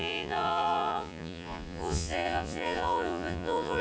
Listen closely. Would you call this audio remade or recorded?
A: remade